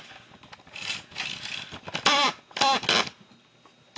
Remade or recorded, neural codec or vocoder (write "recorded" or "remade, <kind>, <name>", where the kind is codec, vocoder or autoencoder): recorded